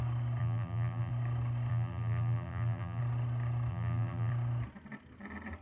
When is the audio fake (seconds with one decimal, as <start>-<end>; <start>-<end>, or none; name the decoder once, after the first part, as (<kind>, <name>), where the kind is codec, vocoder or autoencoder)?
0.4-1.1 (vocoder, BigVGAN v2); 1.7-3.0; 3.7-4.3